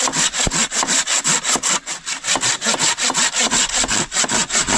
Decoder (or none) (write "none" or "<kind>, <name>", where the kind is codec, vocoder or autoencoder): none